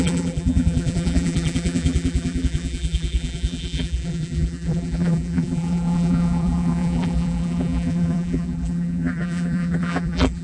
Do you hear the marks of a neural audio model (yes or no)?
yes